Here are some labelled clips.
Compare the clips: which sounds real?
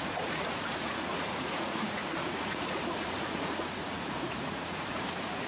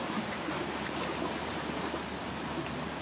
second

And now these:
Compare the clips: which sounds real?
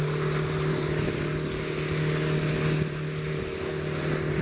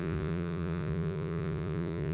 first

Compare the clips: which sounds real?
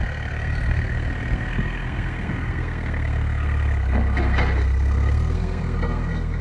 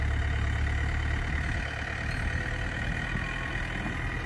second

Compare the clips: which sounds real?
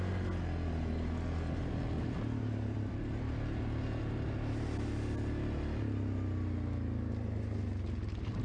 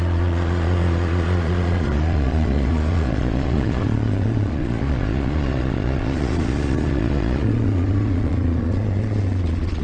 first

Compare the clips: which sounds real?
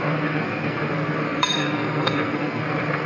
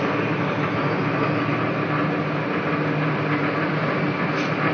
second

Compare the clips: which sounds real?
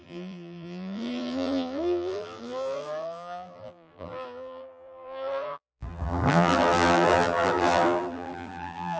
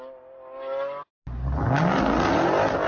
second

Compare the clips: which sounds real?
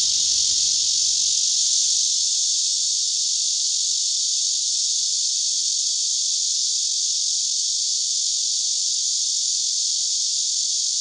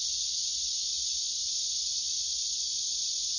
first